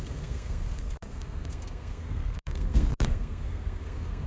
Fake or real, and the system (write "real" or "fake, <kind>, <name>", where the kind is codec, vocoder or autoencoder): fake, codec, SNAC